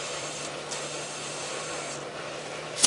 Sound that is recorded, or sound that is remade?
remade